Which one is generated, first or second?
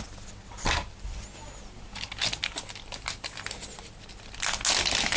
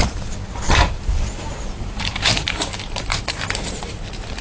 second